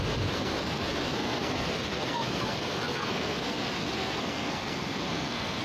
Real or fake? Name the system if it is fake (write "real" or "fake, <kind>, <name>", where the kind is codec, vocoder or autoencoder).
fake, codec, SNAC